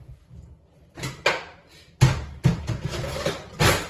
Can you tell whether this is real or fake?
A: real